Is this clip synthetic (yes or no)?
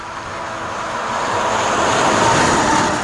no